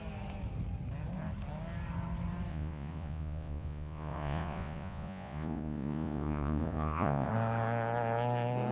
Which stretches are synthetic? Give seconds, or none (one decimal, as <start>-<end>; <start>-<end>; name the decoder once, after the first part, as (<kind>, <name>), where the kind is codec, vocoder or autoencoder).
2.5-7.3 (vocoder, Vocos)